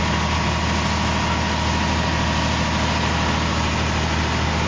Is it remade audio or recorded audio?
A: recorded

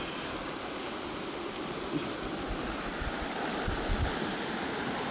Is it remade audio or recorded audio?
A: recorded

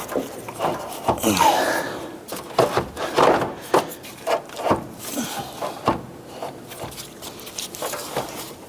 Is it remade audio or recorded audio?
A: recorded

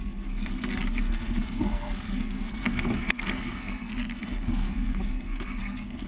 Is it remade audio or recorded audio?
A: remade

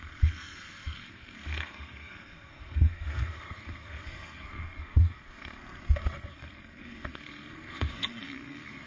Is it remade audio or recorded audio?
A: remade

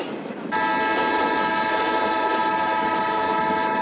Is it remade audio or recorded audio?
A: recorded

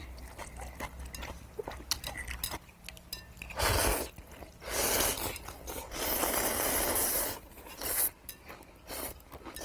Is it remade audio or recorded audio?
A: recorded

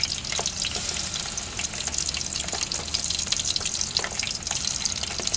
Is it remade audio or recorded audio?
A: recorded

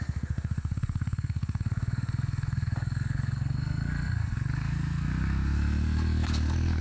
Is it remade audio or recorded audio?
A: remade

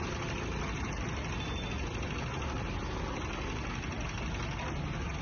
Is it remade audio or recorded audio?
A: recorded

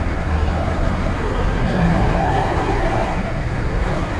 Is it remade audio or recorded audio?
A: remade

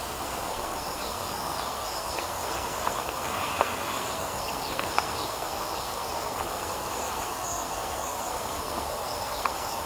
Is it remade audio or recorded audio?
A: remade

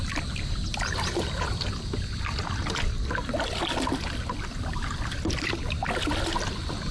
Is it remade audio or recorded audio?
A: recorded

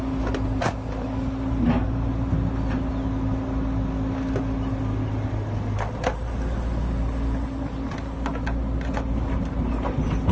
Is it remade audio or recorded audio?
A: recorded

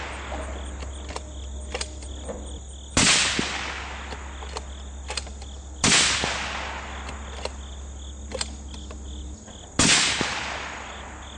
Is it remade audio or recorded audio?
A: recorded